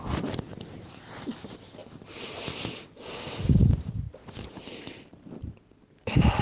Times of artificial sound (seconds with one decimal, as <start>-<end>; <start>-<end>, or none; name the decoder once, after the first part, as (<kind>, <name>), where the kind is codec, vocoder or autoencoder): none